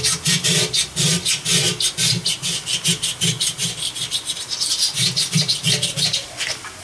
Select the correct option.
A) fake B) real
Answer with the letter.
B